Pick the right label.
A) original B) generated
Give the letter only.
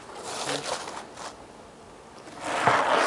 A